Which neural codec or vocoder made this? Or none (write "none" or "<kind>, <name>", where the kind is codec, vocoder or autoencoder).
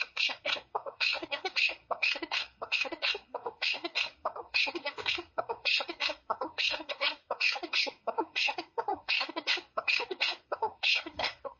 codec, SNAC